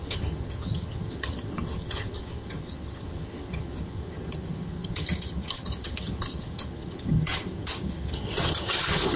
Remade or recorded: remade